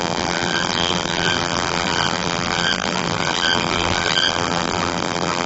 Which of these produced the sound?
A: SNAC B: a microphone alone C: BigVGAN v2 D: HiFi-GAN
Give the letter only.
C